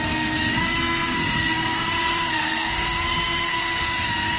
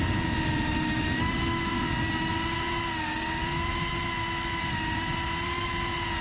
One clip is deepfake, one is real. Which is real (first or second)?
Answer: second